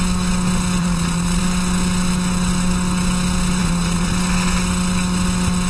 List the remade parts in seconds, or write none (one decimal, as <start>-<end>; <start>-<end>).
0.8-1.4; 3.6-4.1